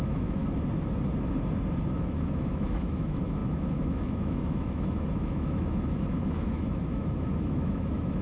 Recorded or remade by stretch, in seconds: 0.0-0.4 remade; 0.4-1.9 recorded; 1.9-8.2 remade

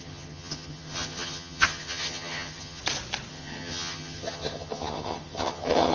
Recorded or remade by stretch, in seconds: 0.0-2.8 remade; 2.8-3.3 recorded; 3.3-5.9 remade

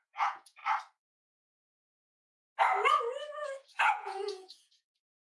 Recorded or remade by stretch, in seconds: 0.0-0.6 remade; 0.6-3.8 recorded; 3.8-5.3 remade